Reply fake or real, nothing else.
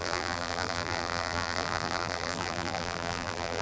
fake